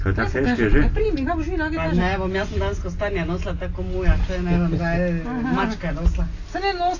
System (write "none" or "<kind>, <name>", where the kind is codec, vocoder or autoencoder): none